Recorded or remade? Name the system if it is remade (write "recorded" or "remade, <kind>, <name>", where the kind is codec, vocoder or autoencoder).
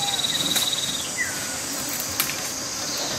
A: recorded